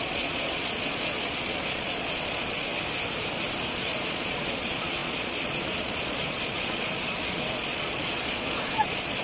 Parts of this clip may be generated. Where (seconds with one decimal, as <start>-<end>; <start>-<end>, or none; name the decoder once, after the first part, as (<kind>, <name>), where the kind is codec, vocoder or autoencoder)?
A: 0.0-2.7 (vocoder, Vocos); 3.7-9.2